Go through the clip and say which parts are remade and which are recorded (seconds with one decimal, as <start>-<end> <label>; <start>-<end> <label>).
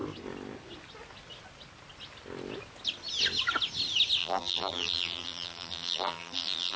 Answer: 0.0-4.2 recorded; 4.2-6.8 remade